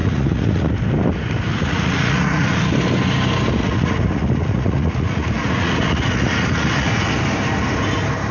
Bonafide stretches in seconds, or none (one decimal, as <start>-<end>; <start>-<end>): 0.7-1.5; 2.6-3.6; 7.1-8.3